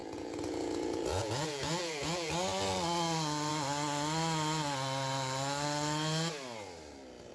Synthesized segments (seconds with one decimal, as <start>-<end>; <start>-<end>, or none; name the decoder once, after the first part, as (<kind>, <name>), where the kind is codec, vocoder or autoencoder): 0.0-2.3 (vocoder, Vocos)